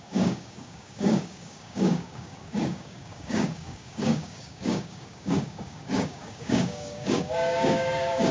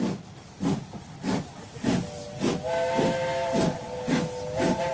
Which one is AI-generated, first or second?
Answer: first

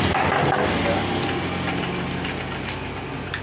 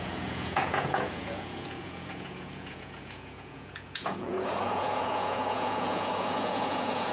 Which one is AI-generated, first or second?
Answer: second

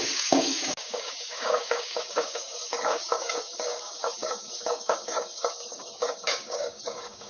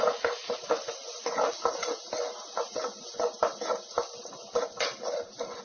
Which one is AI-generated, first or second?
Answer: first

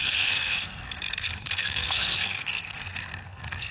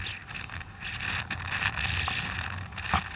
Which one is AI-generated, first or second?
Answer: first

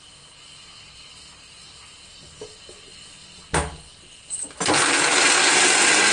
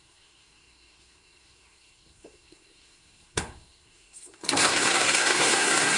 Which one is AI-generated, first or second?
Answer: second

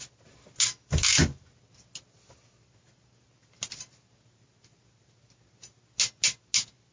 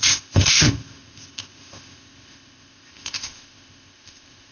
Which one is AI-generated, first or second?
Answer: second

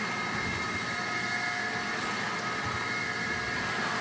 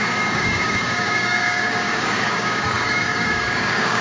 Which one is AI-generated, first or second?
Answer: second